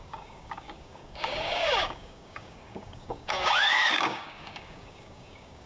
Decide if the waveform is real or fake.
fake